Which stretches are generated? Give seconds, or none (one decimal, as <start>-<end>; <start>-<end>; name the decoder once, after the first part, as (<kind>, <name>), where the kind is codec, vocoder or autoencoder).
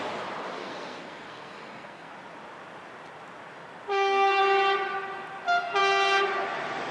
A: 0.6-2.1 (codec, SNAC); 3.9-4.4